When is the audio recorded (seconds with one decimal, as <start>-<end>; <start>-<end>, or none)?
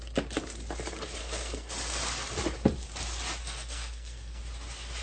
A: 0.0-1.2; 1.7-3.4; 4.4-5.0